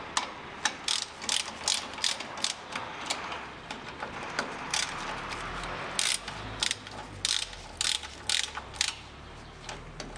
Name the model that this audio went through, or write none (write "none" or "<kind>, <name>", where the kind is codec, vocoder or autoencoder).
none